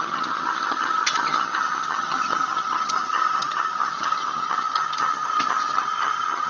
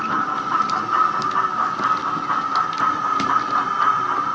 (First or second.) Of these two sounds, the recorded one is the second